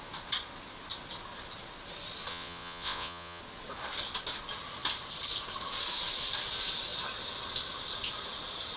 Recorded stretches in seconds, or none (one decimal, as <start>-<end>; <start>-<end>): 0.0-2.3; 3.4-8.8

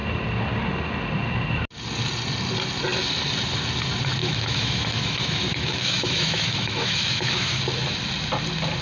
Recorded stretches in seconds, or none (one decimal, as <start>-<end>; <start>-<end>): 0.0-4.2; 7.6-8.8

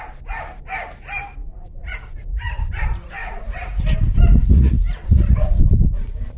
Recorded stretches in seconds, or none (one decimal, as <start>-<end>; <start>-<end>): 0.0-1.4; 2.8-3.2; 3.8-4.4; 5.6-6.4